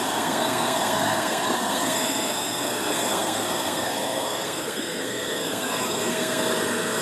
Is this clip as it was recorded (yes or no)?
no